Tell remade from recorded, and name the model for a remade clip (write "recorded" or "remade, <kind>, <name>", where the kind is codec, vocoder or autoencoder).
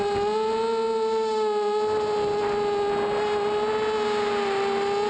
recorded